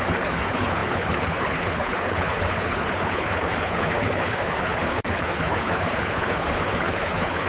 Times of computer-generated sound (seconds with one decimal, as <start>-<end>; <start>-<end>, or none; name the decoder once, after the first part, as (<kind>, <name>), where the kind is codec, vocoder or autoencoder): 0.0-7.5 (codec, HILCodec)